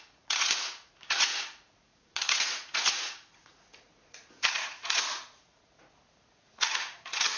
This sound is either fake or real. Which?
fake